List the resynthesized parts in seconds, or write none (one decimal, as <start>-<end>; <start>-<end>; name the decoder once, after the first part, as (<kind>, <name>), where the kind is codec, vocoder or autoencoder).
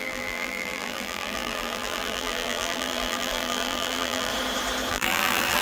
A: 0.0-4.3 (vocoder, BigVGAN v2); 4.9-5.6